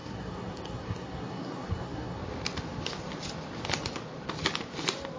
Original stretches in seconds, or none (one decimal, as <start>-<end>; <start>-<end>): 2.2-5.2